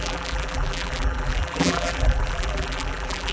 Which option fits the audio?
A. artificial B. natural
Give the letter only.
A